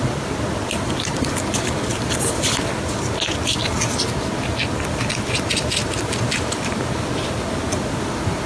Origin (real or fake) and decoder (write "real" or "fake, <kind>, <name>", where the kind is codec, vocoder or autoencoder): real